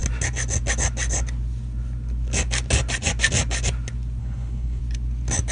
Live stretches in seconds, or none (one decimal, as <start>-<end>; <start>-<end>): 0.0-4.2; 4.8-5.5